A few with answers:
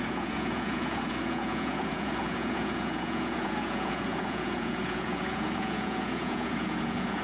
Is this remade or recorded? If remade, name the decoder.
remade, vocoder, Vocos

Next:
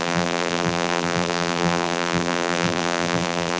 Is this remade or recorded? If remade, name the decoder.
remade, vocoder, BigVGAN v2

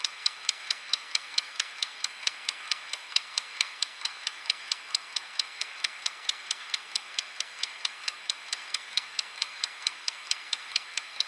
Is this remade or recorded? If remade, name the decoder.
remade, codec, SNAC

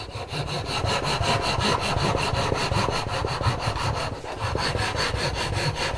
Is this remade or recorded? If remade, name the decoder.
recorded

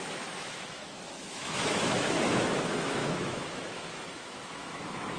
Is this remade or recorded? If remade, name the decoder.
remade, autoencoder, DAC-VAE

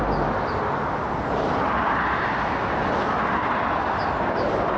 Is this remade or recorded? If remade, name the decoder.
recorded